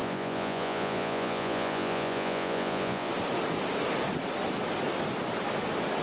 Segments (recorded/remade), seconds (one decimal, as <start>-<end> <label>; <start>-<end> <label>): 0.0-3.1 remade; 3.1-6.0 recorded